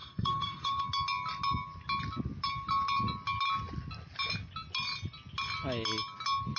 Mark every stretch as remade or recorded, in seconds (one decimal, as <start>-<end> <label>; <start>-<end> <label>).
0.0-0.8 remade; 0.8-6.6 recorded